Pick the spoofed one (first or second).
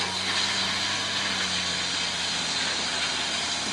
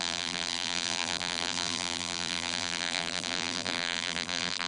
second